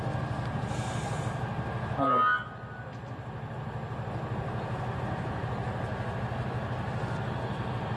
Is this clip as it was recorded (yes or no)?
yes